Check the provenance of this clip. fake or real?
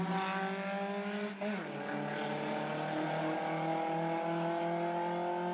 real